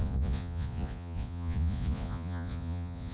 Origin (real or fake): fake